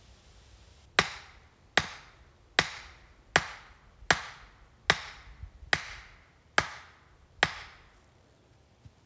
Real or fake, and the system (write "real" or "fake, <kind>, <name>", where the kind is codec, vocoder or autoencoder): real